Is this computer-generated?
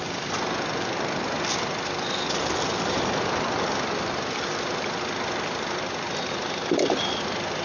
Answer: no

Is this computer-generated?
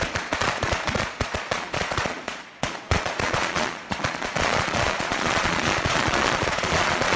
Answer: yes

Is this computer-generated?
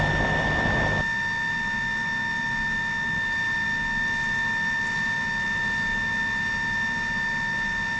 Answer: no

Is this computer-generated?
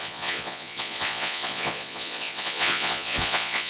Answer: yes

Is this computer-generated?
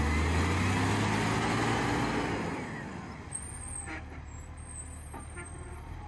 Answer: no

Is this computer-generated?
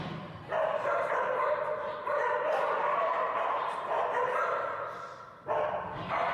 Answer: no